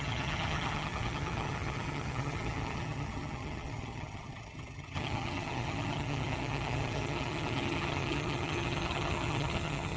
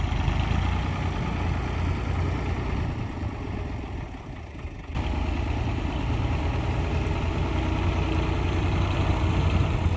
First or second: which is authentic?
second